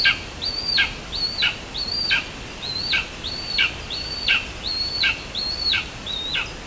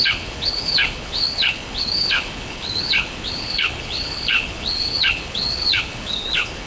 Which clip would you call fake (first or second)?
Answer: second